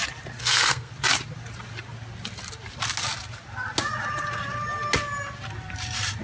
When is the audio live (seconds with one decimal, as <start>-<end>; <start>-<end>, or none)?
0.0-0.4; 0.9-6.2